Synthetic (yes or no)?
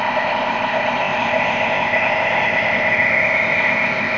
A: yes